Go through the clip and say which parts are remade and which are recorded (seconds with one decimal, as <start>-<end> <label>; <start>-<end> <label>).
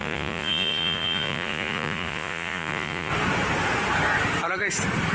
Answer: 0.0-3.1 remade; 3.1-5.1 recorded